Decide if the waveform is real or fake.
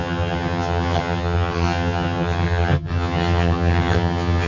fake